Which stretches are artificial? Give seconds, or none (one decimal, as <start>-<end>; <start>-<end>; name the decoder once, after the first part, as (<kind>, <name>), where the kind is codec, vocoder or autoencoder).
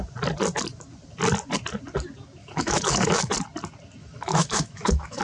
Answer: 2.4-3.3 (autoencoder, DAC-VAE); 4.0-5.2